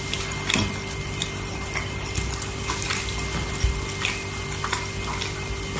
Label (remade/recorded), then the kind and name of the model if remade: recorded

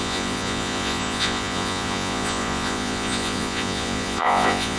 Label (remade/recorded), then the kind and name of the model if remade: remade, vocoder, Vocos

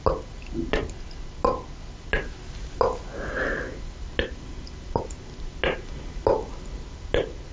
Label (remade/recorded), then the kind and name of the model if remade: recorded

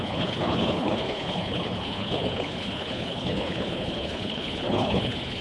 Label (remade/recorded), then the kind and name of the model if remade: remade, codec, HILCodec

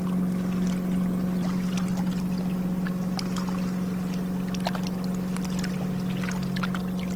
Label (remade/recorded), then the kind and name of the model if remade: recorded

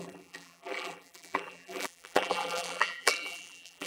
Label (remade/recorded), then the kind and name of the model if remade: remade, vocoder, BigVGAN v2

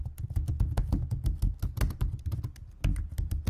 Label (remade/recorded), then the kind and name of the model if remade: recorded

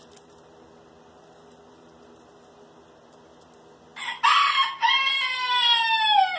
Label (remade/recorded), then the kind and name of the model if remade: recorded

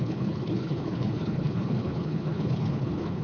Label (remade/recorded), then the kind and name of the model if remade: remade, codec, HILCodec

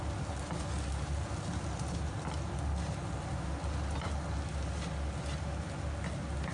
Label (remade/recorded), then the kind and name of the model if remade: recorded